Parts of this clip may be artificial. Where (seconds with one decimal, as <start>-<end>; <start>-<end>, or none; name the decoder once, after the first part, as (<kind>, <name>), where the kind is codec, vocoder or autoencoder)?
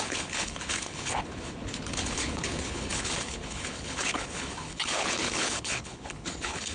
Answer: 0.0-6.7 (codec, HILCodec)